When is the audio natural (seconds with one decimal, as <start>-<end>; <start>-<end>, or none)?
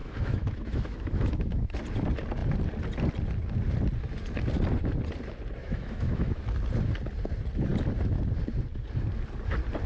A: 1.8-5.6; 6.4-9.9